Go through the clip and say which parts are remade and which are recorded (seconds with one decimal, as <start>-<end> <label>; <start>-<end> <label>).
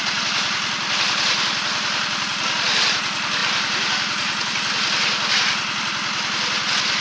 0.0-7.0 recorded